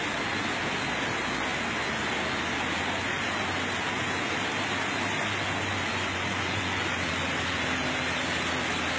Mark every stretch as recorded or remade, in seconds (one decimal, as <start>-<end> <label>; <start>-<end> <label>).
0.0-5.9 recorded; 5.9-7.1 remade; 7.1-9.0 recorded

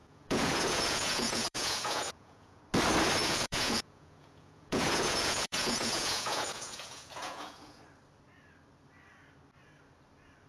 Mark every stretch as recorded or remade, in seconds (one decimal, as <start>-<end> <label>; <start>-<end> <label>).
0.0-2.6 remade; 2.6-3.2 recorded; 3.2-7.8 remade; 7.8-10.5 recorded

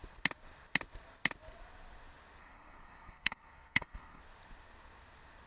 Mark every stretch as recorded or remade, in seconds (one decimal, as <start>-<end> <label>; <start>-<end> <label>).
0.0-2.4 recorded; 2.4-4.2 remade; 4.2-5.5 recorded

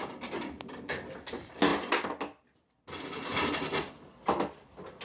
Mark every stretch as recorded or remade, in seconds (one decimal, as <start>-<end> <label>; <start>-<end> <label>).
0.0-5.0 recorded

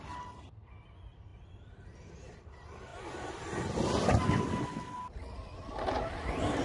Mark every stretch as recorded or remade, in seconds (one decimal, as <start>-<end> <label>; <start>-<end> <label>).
0.0-6.6 recorded

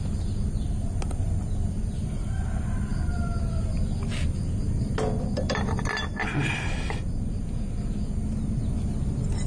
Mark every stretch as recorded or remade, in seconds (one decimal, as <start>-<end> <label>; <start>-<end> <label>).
0.0-9.5 recorded

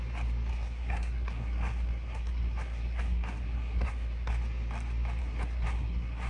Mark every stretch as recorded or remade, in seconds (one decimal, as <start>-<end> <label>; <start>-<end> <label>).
0.0-0.5 recorded; 0.5-4.3 remade; 4.3-5.2 recorded; 5.2-6.3 remade